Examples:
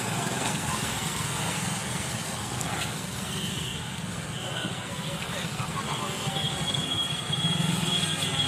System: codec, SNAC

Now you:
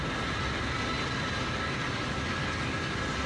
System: none